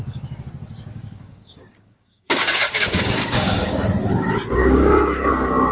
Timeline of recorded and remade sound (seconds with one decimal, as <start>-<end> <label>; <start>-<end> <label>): 0.0-0.9 recorded; 0.9-3.8 remade; 3.8-4.6 recorded; 4.6-5.3 remade; 5.3-5.7 recorded